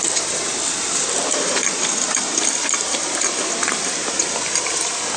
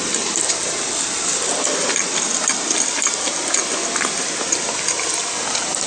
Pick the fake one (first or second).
first